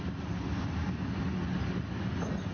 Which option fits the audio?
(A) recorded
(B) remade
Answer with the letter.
A